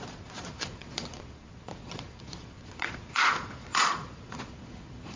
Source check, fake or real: fake